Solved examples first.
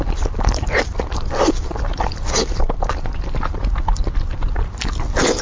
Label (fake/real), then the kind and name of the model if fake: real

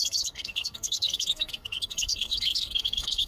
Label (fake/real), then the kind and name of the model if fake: fake, codec, SNAC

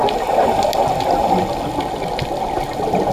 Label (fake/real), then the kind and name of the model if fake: real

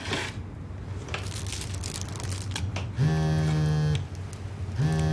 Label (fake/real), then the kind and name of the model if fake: real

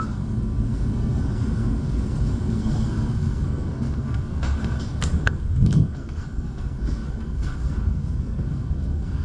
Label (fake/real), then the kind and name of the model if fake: fake, codec, SNAC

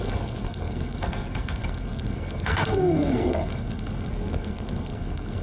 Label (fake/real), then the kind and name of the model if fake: fake, codec, SNAC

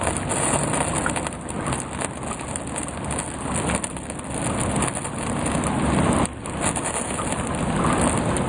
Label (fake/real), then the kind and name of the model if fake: real